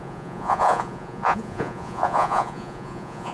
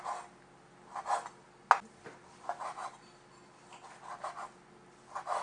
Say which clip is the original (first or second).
second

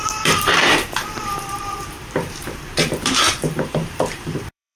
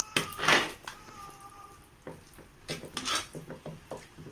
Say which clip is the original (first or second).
second